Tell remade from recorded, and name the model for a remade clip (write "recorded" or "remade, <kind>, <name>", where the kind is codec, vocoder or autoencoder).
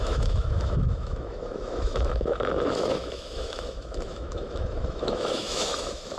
remade, autoencoder, DAC-VAE